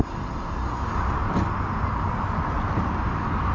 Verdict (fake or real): real